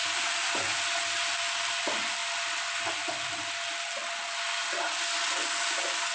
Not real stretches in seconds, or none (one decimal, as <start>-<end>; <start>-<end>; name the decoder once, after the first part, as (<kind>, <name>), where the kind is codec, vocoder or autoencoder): none